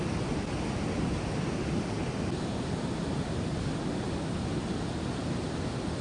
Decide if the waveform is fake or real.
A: real